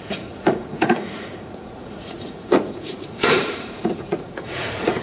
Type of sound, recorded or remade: remade